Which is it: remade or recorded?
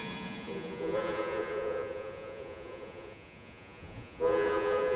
remade